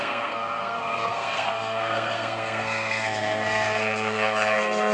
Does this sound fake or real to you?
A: fake